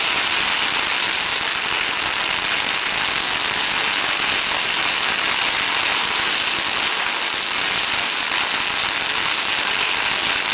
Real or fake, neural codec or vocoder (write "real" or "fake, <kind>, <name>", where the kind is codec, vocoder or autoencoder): real